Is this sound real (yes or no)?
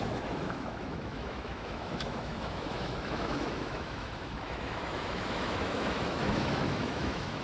no